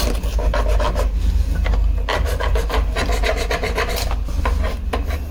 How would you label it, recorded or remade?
recorded